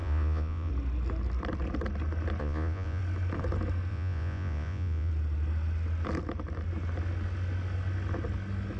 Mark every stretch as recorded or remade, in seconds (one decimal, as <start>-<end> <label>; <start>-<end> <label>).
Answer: 0.0-0.7 remade; 0.7-2.4 recorded; 2.4-3.0 remade; 3.0-3.9 recorded; 3.9-5.1 remade; 5.1-8.8 recorded